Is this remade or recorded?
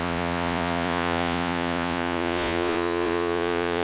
remade